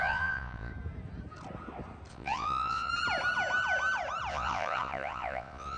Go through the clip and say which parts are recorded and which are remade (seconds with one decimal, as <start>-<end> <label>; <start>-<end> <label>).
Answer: 0.0-0.7 remade; 0.7-2.1 recorded; 2.1-2.9 remade; 2.9-4.3 recorded; 4.3-5.8 remade